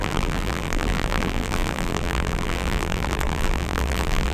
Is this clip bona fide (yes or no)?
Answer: no